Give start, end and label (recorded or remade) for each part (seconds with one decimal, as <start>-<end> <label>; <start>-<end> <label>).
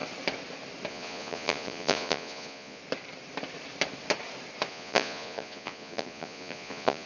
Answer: 0.0-0.9 recorded; 0.9-2.8 remade; 2.8-4.7 recorded; 4.7-7.1 remade